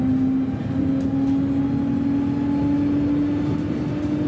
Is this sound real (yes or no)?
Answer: yes